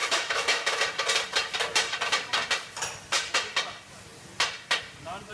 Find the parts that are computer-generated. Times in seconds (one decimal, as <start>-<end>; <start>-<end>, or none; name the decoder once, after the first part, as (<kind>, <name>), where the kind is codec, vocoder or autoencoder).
0.0-0.8 (autoencoder, DAC-VAE)